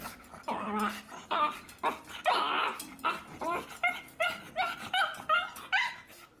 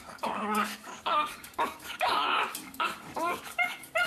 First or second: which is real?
first